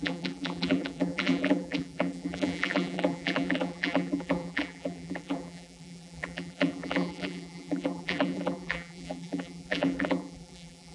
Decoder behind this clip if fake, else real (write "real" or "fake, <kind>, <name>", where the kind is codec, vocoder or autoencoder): fake, vocoder, BigVGAN v2